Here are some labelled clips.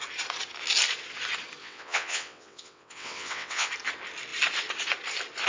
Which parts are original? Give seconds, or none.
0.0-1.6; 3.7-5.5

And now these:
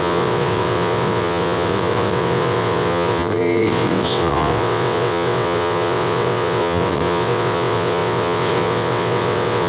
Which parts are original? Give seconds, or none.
none